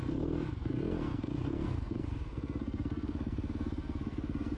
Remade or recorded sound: remade